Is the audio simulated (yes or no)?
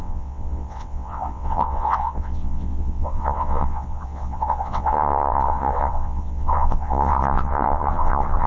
yes